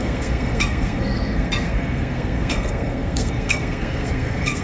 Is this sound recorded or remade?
remade